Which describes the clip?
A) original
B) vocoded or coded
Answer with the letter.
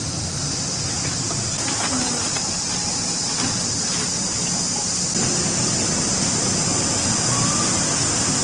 A